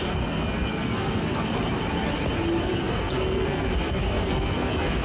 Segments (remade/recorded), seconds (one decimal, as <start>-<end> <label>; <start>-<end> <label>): 0.0-1.5 remade; 1.5-2.6 recorded; 2.6-5.0 remade

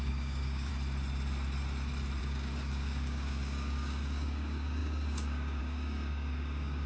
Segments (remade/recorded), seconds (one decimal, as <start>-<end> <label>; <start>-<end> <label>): 0.0-0.7 remade; 0.7-2.2 recorded; 2.2-6.9 remade

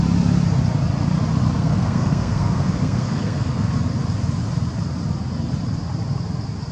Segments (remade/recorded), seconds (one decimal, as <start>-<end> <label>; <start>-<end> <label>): 0.0-1.6 recorded; 1.6-3.7 remade; 3.7-6.7 recorded

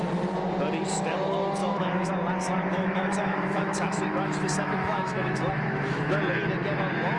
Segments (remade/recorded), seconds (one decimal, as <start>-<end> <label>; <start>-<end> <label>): 0.0-1.6 recorded; 1.6-2.1 remade; 2.1-2.7 recorded; 2.7-6.0 remade; 6.0-7.2 recorded

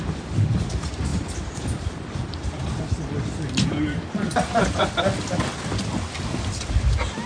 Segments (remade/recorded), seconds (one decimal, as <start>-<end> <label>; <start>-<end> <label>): 0.0-7.3 recorded